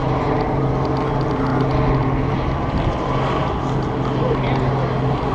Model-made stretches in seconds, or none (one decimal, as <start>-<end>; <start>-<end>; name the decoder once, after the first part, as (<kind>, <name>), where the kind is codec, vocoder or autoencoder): 0.0-0.7 (vocoder, BigVGAN v2)